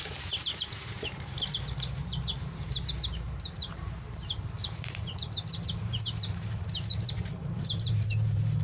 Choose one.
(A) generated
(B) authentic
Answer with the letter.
A